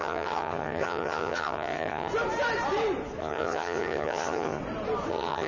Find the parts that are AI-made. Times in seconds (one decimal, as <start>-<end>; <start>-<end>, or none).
0.0-2.1; 3.2-4.6; 5.1-5.5